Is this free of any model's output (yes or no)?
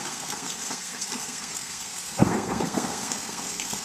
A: no